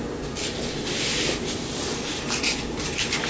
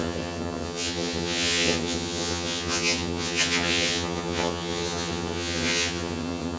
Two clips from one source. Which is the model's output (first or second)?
second